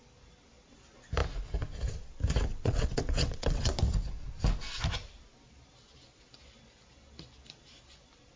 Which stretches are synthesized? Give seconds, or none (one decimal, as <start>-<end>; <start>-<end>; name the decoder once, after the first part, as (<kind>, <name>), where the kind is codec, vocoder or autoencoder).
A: 2.5-3.7 (vocoder, WaveNeXt)